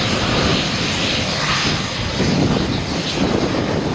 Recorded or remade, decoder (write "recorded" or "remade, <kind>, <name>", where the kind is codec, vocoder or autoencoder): recorded